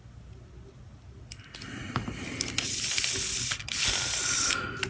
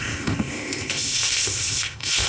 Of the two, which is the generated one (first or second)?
second